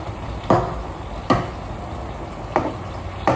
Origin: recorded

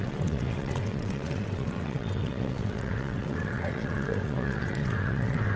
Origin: remade